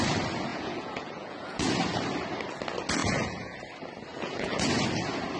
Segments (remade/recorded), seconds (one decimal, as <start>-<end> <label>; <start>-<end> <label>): 0.0-0.5 recorded; 0.5-1.7 remade; 1.7-3.0 recorded; 3.0-3.6 remade; 3.6-4.1 recorded; 4.1-4.6 remade; 4.6-5.4 recorded